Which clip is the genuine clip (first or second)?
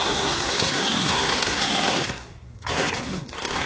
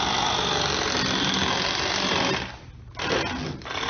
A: second